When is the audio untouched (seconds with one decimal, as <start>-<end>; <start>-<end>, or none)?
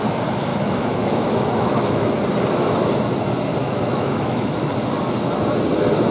0.0-0.5; 2.1-3.6; 4.7-6.1